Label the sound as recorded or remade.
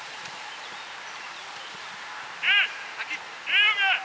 remade